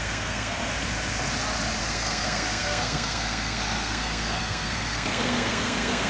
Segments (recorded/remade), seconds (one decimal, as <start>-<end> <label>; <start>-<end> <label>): 0.0-0.6 remade; 0.6-1.8 recorded; 1.8-6.1 remade